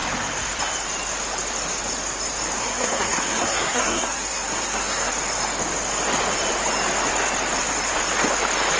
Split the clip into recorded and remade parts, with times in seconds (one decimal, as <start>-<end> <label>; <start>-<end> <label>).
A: 0.0-2.6 recorded; 2.6-5.1 remade; 5.1-8.8 recorded